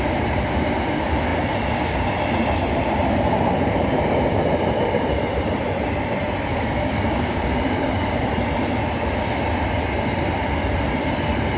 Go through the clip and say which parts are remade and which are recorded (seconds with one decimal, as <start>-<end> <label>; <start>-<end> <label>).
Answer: 0.0-6.5 recorded; 6.5-8.3 remade; 8.3-11.6 recorded